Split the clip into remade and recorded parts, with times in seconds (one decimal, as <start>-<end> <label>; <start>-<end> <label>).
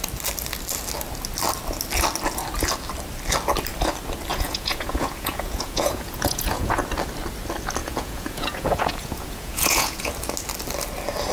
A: 0.0-4.3 recorded; 4.3-6.8 remade; 6.8-7.8 recorded; 7.8-10.1 remade; 10.1-11.3 recorded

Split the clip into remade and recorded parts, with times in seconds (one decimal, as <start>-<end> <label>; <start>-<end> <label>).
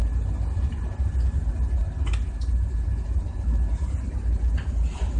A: 0.0-5.2 recorded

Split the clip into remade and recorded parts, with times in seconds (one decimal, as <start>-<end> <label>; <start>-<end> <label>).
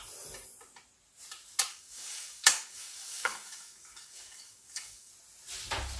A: 0.0-1.7 recorded; 1.7-5.1 remade; 5.1-6.0 recorded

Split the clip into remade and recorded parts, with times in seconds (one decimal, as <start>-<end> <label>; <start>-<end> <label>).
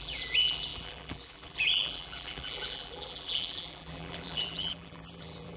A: 0.0-5.6 remade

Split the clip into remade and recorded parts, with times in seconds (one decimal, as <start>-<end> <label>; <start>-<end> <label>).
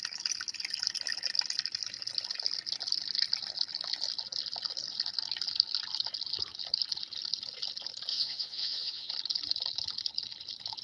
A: 0.0-8.1 recorded; 8.1-9.1 remade; 9.1-10.8 recorded